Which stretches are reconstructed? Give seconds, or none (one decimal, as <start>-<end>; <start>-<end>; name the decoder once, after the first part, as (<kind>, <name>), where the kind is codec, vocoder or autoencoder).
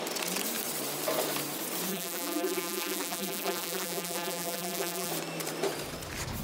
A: 1.9-5.1 (vocoder, BigVGAN v2)